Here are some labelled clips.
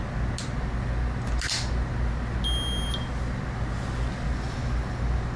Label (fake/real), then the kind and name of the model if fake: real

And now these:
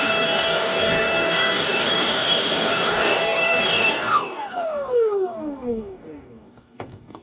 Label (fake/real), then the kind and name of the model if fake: fake, codec, DAC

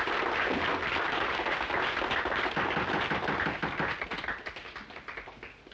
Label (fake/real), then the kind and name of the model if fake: real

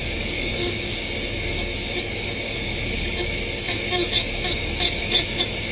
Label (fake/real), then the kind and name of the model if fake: fake, codec, DAC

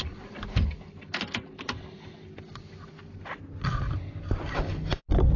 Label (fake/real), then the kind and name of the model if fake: real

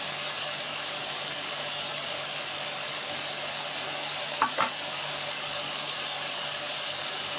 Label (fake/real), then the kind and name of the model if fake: fake, codec, DAC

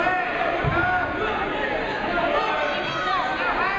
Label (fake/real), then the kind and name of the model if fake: real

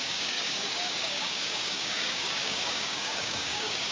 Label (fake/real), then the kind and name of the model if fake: fake, codec, DAC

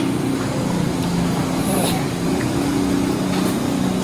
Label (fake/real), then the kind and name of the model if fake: real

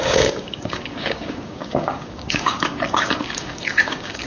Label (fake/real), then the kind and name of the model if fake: fake, codec, DAC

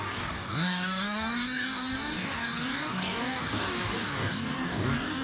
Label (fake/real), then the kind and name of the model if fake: fake, codec, DAC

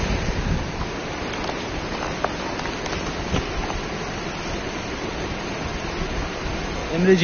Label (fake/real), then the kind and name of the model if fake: real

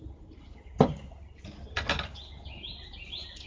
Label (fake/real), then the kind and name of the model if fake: real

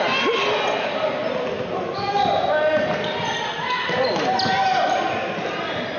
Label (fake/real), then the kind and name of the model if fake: real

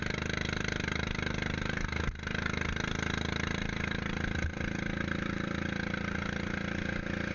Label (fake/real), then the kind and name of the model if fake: real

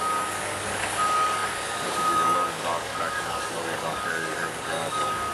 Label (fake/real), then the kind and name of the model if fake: fake, codec, DAC